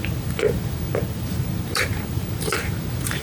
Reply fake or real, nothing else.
fake